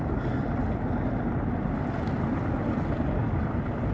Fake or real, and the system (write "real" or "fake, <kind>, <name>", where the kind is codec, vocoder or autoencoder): real